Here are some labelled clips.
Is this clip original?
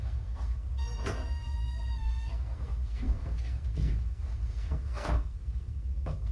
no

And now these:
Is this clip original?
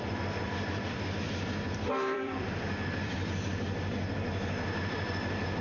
no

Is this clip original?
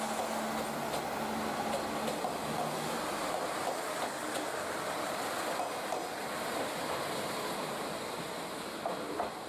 yes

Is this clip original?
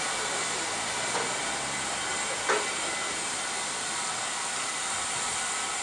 yes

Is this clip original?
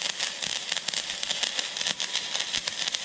yes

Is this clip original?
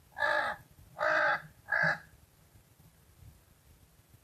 yes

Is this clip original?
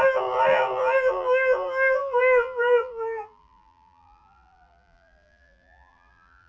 no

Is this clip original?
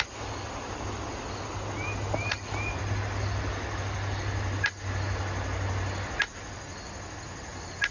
yes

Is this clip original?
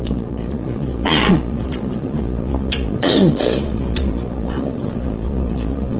no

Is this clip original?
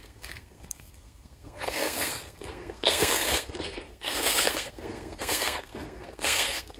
no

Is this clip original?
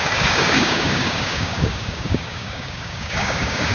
no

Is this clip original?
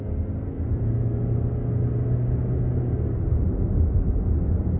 yes